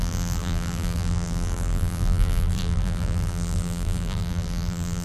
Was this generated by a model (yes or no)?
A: yes